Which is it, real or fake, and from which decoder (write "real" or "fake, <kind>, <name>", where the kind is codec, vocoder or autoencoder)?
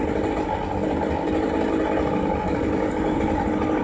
real